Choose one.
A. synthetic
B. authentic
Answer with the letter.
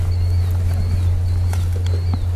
B